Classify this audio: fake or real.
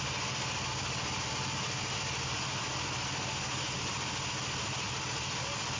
real